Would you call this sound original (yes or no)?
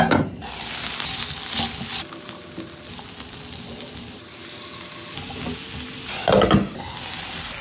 yes